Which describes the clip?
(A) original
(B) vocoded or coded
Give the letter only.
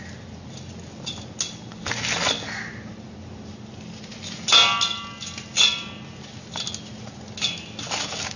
A